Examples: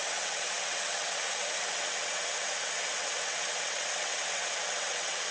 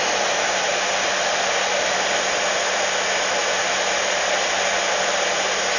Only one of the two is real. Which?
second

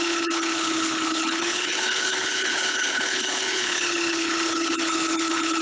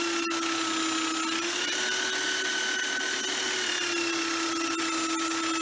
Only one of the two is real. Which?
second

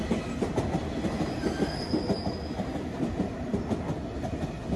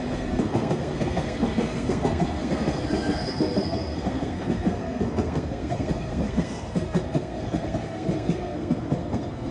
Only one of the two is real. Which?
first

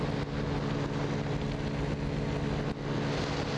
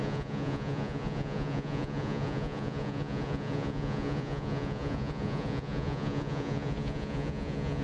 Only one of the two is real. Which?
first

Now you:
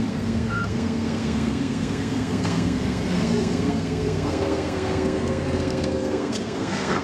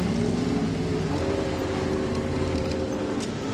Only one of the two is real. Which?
second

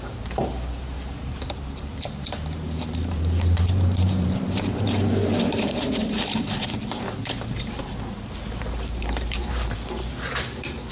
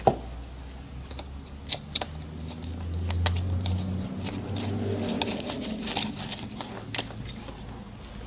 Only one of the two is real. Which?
second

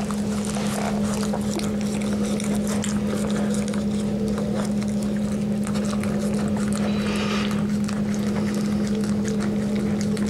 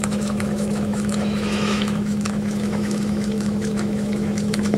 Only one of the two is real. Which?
first